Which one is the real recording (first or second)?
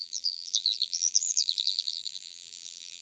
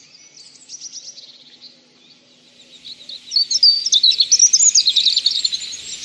second